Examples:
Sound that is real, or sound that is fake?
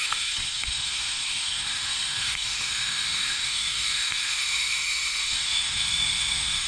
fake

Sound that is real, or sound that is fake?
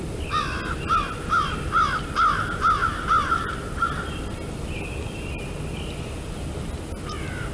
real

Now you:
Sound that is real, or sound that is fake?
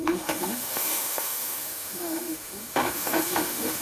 fake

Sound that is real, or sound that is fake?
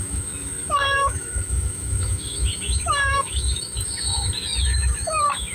fake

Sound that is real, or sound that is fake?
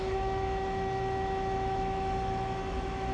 fake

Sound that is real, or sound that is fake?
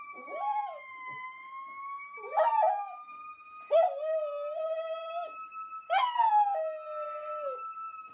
real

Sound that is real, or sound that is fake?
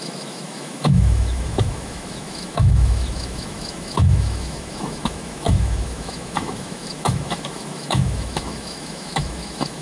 fake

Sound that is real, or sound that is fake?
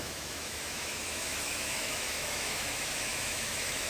fake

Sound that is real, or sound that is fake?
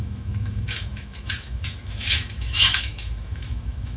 fake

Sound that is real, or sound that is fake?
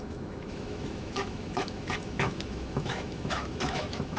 fake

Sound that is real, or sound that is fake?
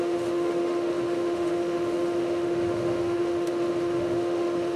fake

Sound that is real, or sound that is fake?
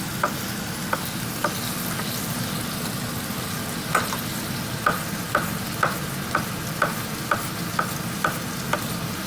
real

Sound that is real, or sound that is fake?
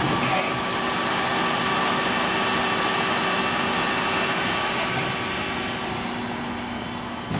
real